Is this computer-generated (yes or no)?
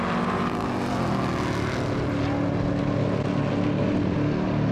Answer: no